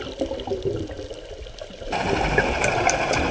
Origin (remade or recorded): recorded